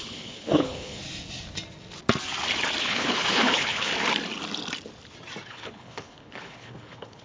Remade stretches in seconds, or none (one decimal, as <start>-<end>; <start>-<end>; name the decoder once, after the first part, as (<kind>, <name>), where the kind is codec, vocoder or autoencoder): 0.0-1.0 (codec, HILCodec); 2.8-3.9; 5.5-7.2

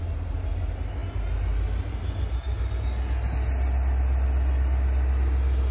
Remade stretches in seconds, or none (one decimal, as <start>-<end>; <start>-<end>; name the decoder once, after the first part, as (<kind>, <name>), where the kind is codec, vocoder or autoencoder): none

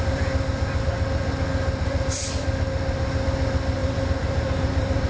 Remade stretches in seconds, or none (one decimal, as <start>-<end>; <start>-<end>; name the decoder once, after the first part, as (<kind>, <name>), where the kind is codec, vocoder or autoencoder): 3.8-5.1 (vocoder, BigVGAN v2)

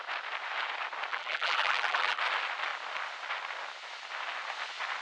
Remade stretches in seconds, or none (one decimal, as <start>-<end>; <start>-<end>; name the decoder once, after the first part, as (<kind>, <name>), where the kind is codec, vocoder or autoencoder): 1.1-2.2 (vocoder, BigVGAN v2)

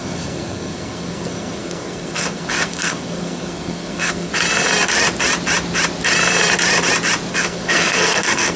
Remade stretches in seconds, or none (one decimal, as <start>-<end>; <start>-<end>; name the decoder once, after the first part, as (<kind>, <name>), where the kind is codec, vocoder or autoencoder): 0.0-4.3 (codec, SNAC); 7.3-8.6

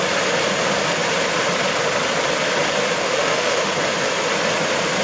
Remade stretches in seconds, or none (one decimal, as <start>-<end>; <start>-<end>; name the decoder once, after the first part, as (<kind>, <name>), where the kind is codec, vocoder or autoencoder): 3.0-3.7 (autoencoder, DAC-VAE)

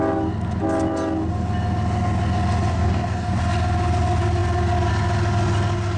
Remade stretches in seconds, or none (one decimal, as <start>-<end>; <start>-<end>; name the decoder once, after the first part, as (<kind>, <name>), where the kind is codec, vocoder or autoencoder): 2.7-3.4 (codec, DAC)

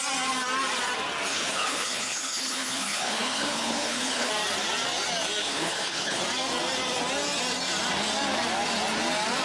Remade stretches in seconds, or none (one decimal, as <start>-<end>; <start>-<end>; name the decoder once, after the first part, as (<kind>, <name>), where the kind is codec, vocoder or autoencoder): 1.3-4.3 (codec, HILCodec); 5.4-6.2